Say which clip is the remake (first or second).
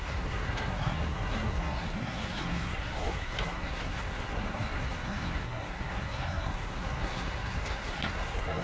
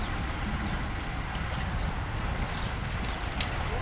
first